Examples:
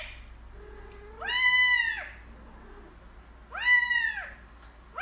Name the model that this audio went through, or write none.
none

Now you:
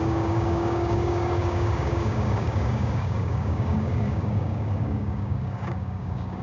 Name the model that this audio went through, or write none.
codec, DAC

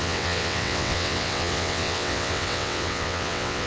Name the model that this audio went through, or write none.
vocoder, WaveNeXt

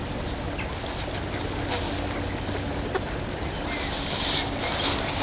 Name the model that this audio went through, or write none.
none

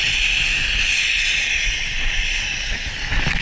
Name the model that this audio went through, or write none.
none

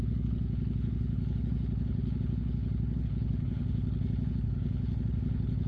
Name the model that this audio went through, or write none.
codec, HILCodec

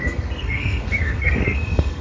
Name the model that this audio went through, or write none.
codec, SNAC